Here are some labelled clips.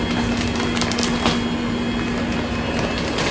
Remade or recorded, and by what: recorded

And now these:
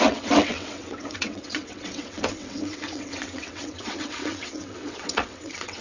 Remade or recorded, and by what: remade, vocoder, WaveNeXt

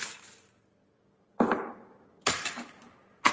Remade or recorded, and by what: recorded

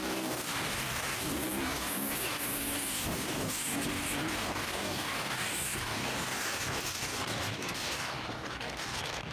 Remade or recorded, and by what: remade, codec, DAC